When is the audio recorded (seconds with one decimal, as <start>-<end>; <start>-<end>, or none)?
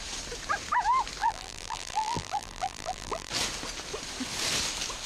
0.0-1.2; 3.3-5.1